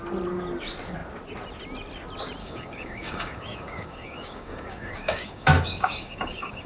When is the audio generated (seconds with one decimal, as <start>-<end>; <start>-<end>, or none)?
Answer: 2.4-6.7